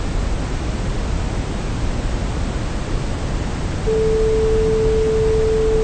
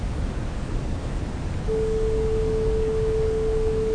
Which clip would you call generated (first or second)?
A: second